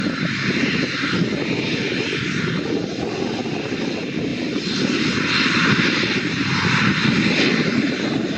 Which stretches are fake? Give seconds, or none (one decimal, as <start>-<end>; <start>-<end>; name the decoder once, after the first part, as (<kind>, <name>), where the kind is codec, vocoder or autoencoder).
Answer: none